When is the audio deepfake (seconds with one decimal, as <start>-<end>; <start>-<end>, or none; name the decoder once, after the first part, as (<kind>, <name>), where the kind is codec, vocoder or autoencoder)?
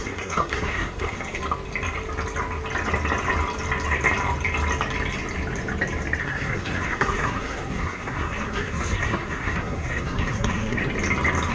0.0-1.4 (codec, SNAC); 6.2-10.8